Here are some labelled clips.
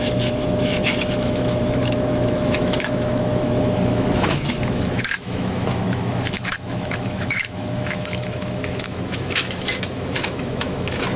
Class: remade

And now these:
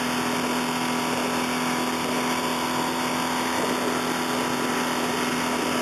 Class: recorded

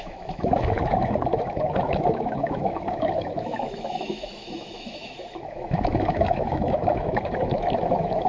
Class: remade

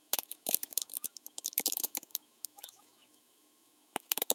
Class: remade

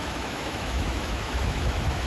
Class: remade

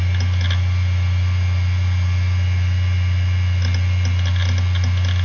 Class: recorded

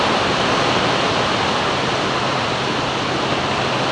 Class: recorded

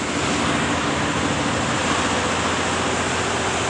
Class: recorded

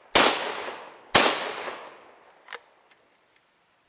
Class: recorded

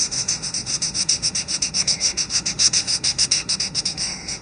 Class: remade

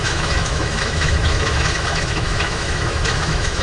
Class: remade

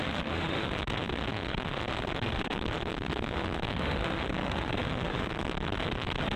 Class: remade